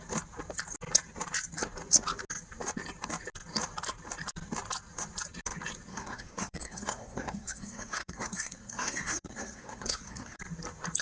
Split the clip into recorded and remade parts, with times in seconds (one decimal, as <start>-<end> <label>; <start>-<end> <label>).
0.0-5.9 recorded; 5.9-10.4 remade; 10.4-11.0 recorded